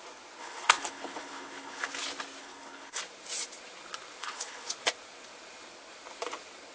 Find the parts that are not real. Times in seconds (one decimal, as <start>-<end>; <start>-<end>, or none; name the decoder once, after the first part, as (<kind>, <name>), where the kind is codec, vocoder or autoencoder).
0.4-1.9 (codec, HILCodec); 2.4-3.0; 4.2-4.7